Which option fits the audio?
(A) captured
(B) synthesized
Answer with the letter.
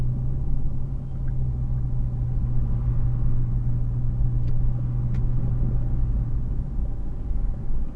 A